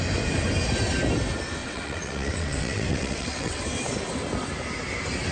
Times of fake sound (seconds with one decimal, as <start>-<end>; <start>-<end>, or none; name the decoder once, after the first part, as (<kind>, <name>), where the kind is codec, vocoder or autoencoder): 1.6-3.6 (vocoder, WaveNeXt)